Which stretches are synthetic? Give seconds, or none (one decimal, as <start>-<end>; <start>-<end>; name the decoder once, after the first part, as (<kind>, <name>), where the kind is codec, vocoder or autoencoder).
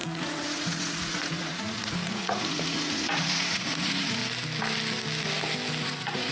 0.0-4.2 (vocoder, Vocos); 5.8-6.3